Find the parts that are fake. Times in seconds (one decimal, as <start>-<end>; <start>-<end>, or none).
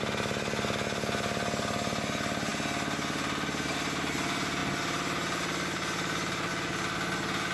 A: none